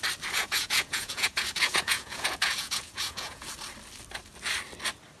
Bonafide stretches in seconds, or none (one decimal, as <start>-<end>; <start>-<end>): 0.0-0.4; 3.5-5.2